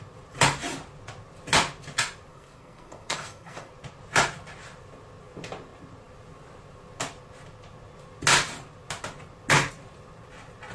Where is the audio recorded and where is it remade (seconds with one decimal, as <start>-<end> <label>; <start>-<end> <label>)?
0.0-2.3 recorded; 2.3-3.7 remade; 3.7-10.7 recorded

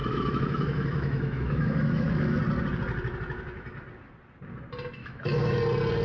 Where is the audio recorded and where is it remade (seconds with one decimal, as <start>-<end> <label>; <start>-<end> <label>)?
0.0-2.4 remade; 2.4-5.0 recorded; 5.0-5.6 remade; 5.6-6.0 recorded

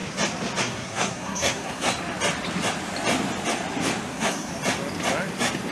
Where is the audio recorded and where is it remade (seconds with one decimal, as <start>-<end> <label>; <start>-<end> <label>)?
0.0-0.6 recorded; 0.6-1.9 remade; 1.9-4.1 recorded; 4.1-4.5 remade; 4.5-5.7 recorded

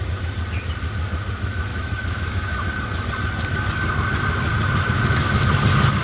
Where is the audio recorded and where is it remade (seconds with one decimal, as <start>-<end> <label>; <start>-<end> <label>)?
0.0-1.7 recorded; 1.7-2.7 remade; 2.7-6.0 recorded

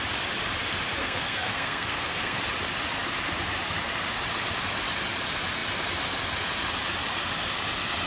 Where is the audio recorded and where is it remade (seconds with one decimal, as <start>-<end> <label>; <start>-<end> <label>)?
0.0-1.0 recorded; 1.0-2.4 remade; 2.4-8.1 recorded

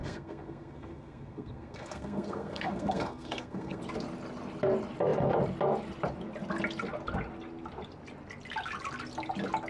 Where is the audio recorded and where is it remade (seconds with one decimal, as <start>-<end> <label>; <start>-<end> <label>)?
0.0-3.8 remade; 3.8-9.7 recorded